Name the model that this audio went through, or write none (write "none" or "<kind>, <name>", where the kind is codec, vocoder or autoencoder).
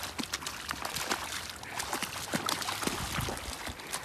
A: none